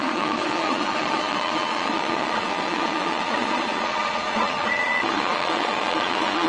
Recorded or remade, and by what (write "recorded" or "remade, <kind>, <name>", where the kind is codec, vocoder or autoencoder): remade, vocoder, Vocos